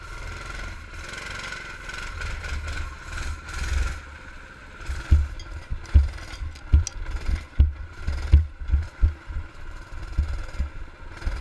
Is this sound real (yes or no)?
yes